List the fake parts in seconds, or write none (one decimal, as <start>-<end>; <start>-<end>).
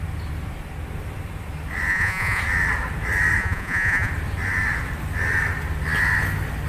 1.9-2.4; 3.4-4.1